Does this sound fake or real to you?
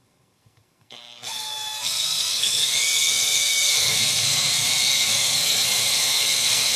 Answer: fake